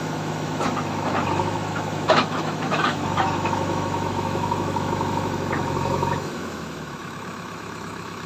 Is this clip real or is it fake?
fake